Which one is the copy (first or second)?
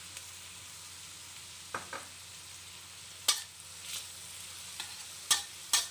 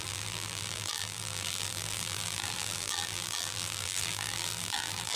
second